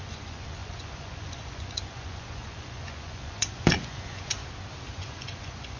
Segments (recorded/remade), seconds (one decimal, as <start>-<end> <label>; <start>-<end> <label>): 0.0-4.4 remade; 4.4-4.9 recorded; 4.9-5.8 remade

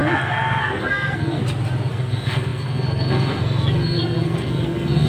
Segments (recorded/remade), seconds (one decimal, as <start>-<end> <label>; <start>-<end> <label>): 0.0-1.4 remade; 1.4-1.9 recorded; 1.9-5.1 remade

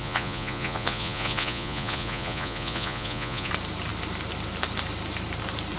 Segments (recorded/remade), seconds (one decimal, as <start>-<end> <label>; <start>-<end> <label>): 0.0-3.5 remade; 3.5-5.8 recorded

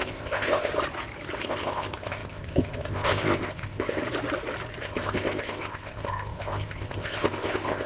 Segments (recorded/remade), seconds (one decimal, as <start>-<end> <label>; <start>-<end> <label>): 0.0-0.7 remade; 0.7-1.4 recorded; 1.4-4.0 remade; 4.0-4.8 recorded; 4.8-7.9 remade

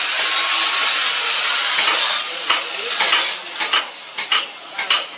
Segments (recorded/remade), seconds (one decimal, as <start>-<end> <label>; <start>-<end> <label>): 0.0-5.2 recorded